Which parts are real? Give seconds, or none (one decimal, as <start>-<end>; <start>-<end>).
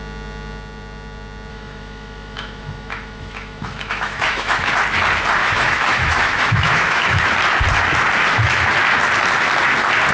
0.0-1.5; 4.7-5.4; 7.2-10.1